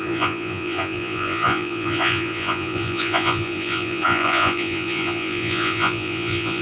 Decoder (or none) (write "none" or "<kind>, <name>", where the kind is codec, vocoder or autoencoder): vocoder, Vocos